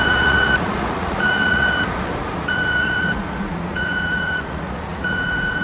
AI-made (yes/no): yes